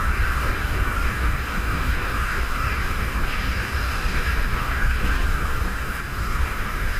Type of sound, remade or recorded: remade